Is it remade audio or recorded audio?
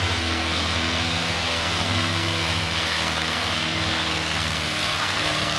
remade